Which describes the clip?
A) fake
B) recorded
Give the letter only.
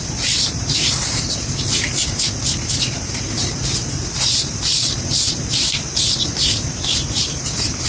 A